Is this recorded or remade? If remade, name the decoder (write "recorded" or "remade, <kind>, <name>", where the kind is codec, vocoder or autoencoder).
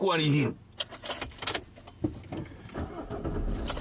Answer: recorded